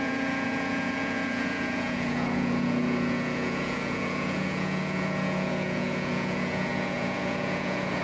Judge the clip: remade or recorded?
remade